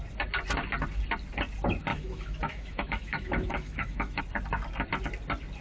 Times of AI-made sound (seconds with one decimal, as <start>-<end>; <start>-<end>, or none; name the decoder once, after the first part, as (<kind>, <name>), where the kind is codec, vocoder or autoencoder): 1.9-4.2 (autoencoder, DAC-VAE)